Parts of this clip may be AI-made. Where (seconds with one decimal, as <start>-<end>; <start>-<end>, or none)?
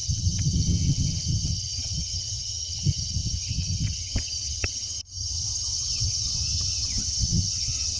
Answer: 0.0-8.0